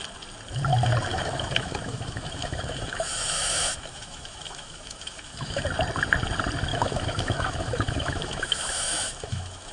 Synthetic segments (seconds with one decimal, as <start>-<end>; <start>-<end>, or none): 1.1-5.6; 6.7-9.7